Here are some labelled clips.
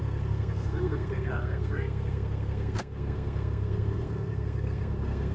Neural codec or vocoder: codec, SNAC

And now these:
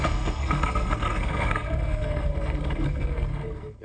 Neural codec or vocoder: codec, SNAC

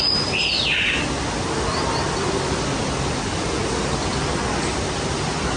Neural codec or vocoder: none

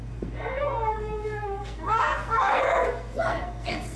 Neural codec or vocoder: codec, SNAC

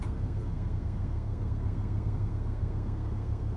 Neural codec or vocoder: codec, SNAC